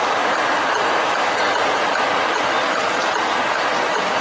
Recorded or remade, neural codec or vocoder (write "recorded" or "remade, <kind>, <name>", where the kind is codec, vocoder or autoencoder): recorded